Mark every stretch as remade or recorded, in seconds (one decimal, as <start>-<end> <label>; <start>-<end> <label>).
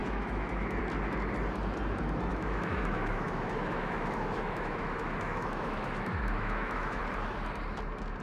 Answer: 0.0-0.8 remade; 0.8-2.3 recorded; 2.3-7.0 remade; 7.0-8.2 recorded